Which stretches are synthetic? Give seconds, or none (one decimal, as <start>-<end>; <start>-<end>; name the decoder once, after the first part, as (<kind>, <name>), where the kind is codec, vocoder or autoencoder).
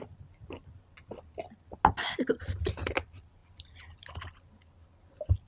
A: none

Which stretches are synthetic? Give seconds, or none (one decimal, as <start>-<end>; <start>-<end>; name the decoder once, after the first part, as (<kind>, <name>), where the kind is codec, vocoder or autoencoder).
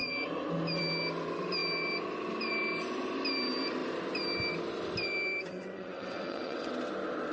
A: 5.5-6.7 (vocoder, WaveNeXt)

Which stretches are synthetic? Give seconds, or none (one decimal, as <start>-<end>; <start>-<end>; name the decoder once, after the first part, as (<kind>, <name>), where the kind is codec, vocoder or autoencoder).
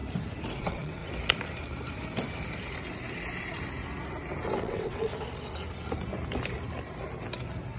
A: 0.6-1.0 (vocoder, WaveNeXt); 4.6-5.1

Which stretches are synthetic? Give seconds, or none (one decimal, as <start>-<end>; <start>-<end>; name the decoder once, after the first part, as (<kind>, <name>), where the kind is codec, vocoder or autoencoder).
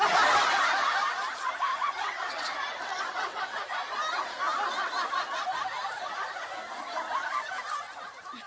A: 1.7-2.4 (vocoder, WaveNeXt); 2.9-3.6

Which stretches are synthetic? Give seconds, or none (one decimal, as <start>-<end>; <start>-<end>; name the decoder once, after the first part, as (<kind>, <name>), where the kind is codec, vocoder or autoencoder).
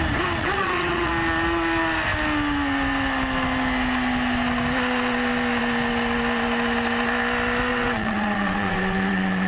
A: 0.4-1.1 (vocoder, WaveNeXt); 7.7-9.5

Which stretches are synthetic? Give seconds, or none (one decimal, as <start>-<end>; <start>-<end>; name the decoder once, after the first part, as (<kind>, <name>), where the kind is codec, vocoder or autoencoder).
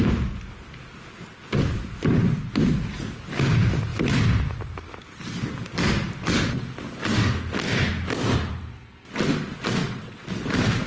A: 9.8-10.4 (vocoder, WaveNeXt)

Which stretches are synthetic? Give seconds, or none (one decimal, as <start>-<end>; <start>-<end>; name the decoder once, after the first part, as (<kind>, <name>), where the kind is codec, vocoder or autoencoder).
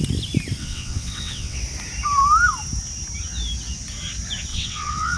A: 0.6-1.6 (vocoder, WaveNeXt); 4.5-5.2